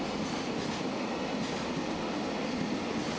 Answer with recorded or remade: recorded